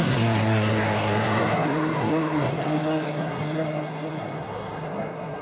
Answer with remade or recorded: remade